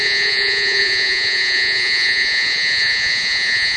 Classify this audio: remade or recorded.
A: remade